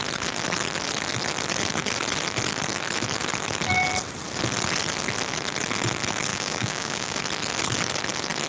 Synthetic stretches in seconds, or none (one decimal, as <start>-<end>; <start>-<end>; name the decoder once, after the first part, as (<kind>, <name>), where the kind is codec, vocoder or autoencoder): 6.3-7.2 (codec, DAC)